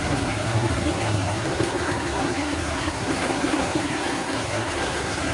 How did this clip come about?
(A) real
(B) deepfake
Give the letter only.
B